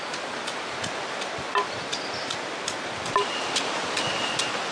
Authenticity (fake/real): real